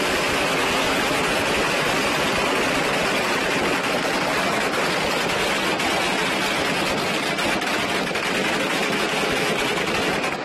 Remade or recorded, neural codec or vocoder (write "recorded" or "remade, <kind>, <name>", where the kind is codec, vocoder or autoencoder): recorded